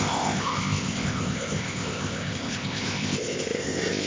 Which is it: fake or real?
fake